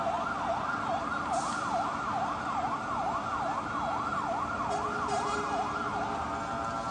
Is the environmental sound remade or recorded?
recorded